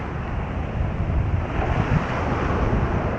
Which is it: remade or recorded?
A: recorded